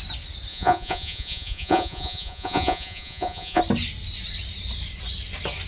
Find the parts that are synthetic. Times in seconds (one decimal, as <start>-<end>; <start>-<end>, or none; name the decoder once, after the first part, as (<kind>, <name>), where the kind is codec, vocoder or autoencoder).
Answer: 0.5-3.6 (vocoder, Vocos)